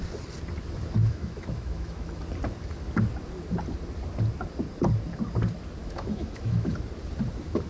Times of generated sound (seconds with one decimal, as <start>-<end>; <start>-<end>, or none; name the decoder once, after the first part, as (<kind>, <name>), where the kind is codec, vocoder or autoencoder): 1.0-2.2 (autoencoder, DAC-VAE); 5.8-6.7